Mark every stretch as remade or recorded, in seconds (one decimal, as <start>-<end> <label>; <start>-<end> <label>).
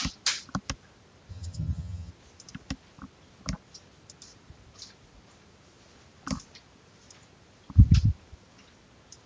0.0-1.3 recorded; 1.3-2.1 remade; 2.1-9.3 recorded